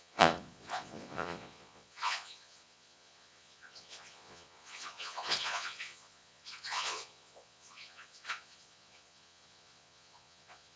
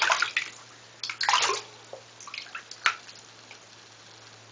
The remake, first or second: first